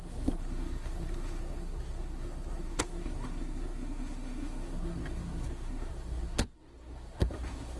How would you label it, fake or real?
fake